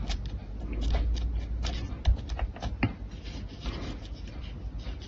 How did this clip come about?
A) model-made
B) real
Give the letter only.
B